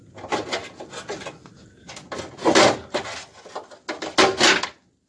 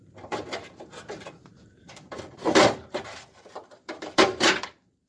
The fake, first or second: second